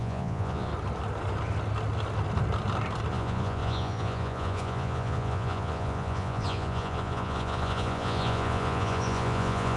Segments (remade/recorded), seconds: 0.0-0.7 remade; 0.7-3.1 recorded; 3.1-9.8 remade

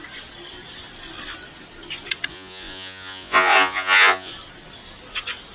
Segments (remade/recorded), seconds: 0.0-2.3 recorded; 2.3-4.3 remade; 4.3-5.5 recorded

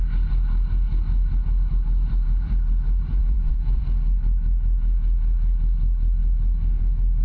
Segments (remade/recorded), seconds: 0.0-3.2 recorded; 3.2-3.8 remade; 3.8-7.2 recorded